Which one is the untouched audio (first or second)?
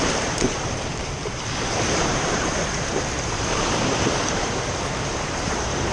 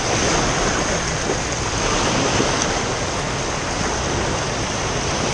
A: second